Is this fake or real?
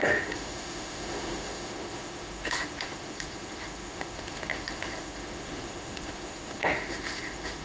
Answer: fake